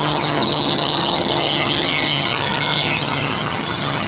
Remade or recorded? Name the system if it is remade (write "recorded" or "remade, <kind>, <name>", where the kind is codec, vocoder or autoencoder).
remade, vocoder, HiFi-GAN